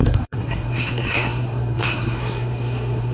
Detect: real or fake fake